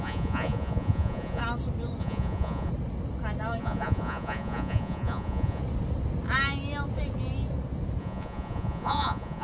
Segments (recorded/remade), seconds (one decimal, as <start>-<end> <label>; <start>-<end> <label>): 0.0-1.4 remade; 1.4-2.0 recorded; 2.0-2.7 remade; 2.7-3.6 recorded; 3.6-5.6 remade; 5.6-8.0 recorded; 8.0-9.4 remade